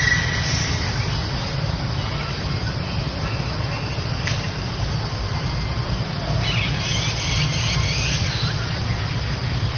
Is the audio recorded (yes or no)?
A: yes